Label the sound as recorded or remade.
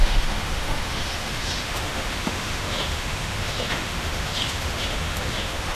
remade